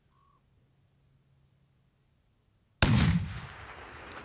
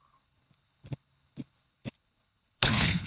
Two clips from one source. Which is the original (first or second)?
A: first